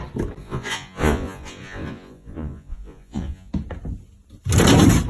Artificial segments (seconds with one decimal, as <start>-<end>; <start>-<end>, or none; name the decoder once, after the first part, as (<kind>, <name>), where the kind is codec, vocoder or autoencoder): 0.4-3.5 (vocoder, Vocos)